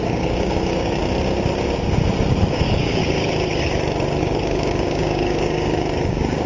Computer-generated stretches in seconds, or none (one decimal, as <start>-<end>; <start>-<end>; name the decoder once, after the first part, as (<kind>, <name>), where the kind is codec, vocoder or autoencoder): 0.0-1.0 (codec, DAC); 2.5-3.0; 4.2-6.5